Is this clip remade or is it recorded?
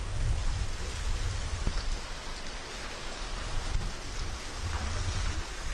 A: recorded